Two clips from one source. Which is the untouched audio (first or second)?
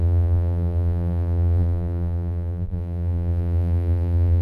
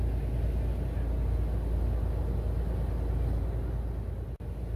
second